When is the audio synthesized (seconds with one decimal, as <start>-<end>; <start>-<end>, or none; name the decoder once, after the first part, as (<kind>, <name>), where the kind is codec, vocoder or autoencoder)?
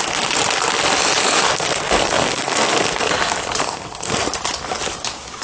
1.2-3.1 (codec, SNAC); 3.6-4.2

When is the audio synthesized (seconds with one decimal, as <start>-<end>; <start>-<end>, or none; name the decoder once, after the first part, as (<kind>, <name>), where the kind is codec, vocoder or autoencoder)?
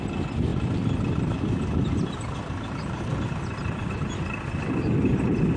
none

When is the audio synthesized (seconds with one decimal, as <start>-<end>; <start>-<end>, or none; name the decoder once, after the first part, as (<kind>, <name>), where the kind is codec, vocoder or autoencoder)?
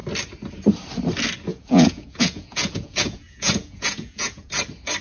1.5-4.5 (vocoder, Vocos)